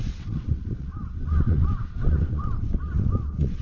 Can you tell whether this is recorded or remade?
remade